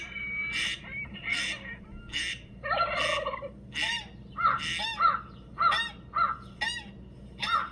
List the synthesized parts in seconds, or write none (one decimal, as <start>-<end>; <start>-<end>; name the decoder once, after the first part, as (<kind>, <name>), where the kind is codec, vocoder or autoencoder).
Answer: 0.4-1.7 (vocoder, BigVGAN v2); 2.1-2.9